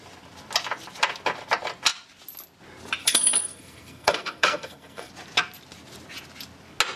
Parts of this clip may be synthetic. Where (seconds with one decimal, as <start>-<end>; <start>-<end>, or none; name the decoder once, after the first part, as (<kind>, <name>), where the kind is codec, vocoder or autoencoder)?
3.0-5.1 (codec, SNAC)